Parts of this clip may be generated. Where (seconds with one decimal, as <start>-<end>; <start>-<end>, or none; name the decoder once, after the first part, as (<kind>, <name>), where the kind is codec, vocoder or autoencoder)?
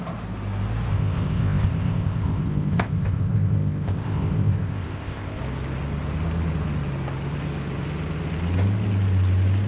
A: 0.9-5.4 (codec, ZipCodec)